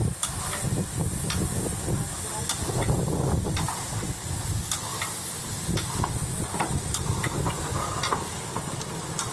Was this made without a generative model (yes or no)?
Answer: yes